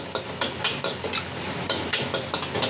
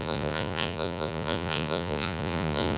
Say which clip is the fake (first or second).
second